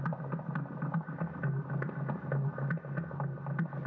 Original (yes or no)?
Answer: yes